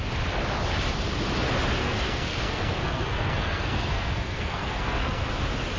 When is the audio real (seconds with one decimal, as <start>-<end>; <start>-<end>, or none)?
0.0-1.8; 5.3-5.8